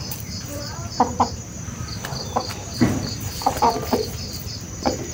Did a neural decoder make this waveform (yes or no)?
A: yes